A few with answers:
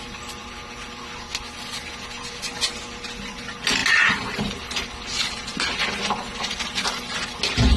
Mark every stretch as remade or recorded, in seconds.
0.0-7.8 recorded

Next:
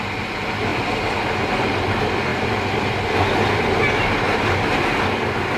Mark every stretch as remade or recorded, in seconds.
0.0-5.6 recorded

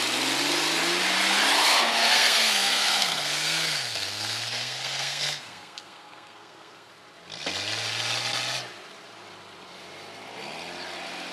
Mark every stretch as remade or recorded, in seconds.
0.0-1.7 recorded; 1.7-6.9 remade; 6.9-11.3 recorded

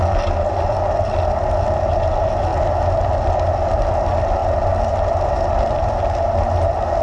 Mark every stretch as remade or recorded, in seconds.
0.0-7.0 recorded

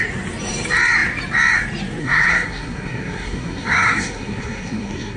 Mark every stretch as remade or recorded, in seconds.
0.0-2.0 recorded; 2.0-5.2 remade

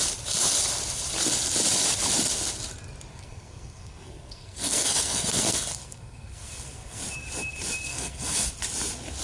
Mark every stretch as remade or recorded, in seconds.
0.0-3.1 recorded; 3.1-7.0 remade; 7.0-7.9 recorded; 7.9-8.5 remade; 8.5-9.2 recorded

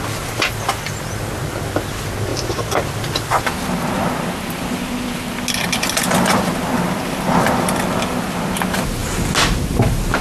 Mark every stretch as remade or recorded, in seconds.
0.0-10.2 recorded

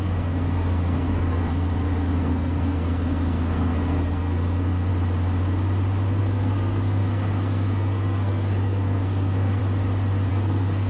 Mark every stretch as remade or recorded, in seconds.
0.0-4.9 remade; 4.9-6.2 recorded; 6.2-9.6 remade; 9.6-10.3 recorded; 10.3-10.9 remade